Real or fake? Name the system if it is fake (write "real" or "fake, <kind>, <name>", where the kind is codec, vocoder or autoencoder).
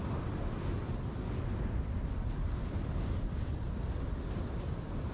real